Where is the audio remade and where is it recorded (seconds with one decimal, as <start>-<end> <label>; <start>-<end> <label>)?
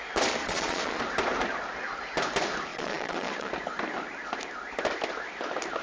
0.0-0.4 recorded; 0.4-1.0 remade; 1.0-2.7 recorded; 2.7-3.5 remade; 3.5-5.8 recorded